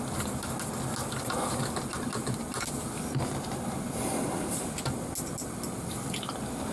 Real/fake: real